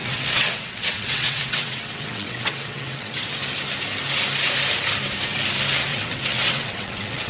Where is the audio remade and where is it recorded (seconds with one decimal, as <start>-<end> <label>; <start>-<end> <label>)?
0.0-3.4 remade; 3.4-5.9 recorded; 5.9-7.3 remade